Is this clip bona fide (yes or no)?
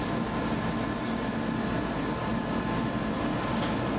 yes